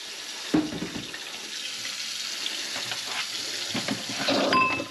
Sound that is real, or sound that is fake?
real